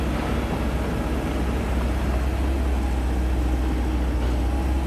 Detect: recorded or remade recorded